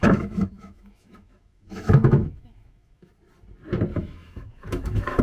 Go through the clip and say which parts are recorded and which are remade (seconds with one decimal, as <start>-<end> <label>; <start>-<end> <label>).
0.0-3.1 remade; 3.1-3.9 recorded; 3.9-5.2 remade